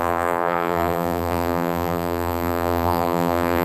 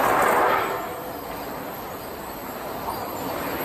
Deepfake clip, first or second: first